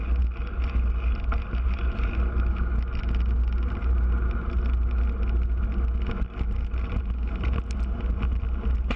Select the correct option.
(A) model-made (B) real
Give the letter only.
B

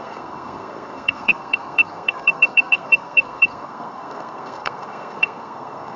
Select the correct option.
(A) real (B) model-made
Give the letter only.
B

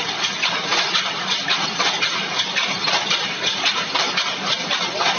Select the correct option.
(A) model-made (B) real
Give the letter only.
B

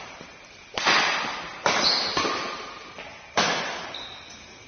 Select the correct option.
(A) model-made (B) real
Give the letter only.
B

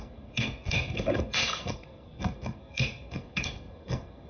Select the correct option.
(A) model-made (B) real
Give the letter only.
A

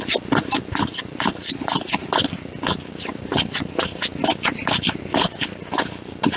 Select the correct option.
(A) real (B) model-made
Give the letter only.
A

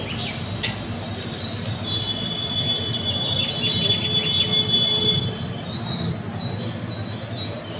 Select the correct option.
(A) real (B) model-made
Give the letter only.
A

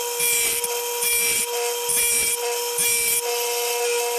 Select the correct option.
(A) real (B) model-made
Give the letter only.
A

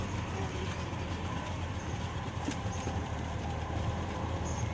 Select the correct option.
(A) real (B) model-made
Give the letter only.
B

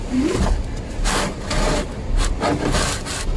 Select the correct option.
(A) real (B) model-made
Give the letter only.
A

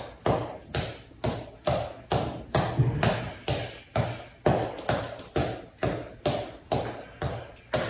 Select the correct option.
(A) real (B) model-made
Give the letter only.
A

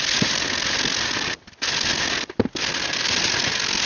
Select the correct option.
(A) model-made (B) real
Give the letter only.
B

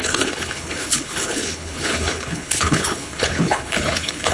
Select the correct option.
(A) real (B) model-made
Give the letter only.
B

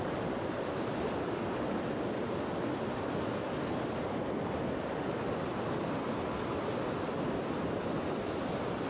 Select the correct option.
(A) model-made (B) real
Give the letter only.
B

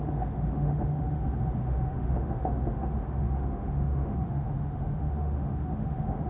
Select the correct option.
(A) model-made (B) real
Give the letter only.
A